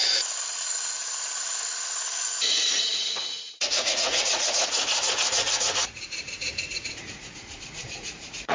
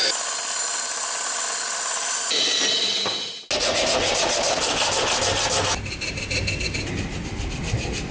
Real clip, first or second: second